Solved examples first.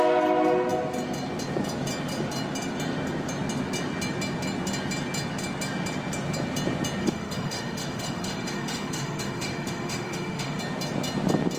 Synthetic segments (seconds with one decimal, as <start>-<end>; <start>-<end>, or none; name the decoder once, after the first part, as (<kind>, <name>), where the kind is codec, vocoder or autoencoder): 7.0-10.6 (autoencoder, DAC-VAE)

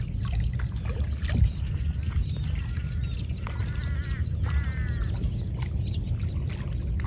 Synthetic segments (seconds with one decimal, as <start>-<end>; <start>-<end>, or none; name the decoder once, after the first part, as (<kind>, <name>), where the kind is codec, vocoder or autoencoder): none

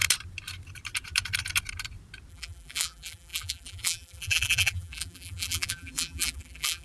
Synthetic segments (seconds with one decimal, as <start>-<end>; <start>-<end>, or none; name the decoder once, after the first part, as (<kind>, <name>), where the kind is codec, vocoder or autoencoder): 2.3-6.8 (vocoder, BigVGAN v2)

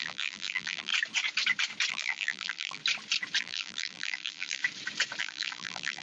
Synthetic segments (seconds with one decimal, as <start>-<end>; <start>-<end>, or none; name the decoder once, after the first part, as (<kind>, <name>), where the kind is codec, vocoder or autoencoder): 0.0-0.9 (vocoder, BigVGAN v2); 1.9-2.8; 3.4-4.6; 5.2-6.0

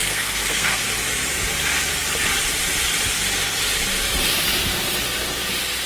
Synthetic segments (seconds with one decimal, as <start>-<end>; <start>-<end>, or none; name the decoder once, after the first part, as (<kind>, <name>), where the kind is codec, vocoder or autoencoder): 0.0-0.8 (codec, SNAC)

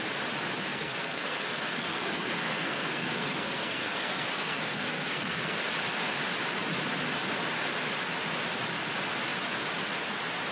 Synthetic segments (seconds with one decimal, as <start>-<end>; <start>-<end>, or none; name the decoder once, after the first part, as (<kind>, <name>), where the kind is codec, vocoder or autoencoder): 0.7-5.6 (codec, SNAC)

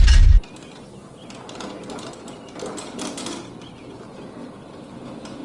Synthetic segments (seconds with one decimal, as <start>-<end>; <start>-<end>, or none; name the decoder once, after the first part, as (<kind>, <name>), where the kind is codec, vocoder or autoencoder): none

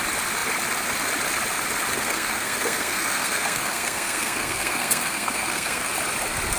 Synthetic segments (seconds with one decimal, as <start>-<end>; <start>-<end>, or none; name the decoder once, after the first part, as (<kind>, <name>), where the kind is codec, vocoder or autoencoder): 1.9-5.9 (codec, SNAC)